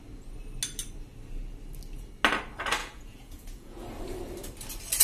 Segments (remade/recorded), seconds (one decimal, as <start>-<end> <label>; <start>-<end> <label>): 0.0-2.8 recorded; 2.8-3.8 remade; 3.8-5.0 recorded